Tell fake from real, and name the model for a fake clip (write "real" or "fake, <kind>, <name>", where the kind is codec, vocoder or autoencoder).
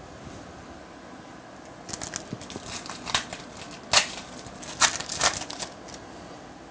real